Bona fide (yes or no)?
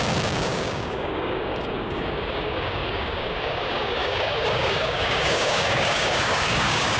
no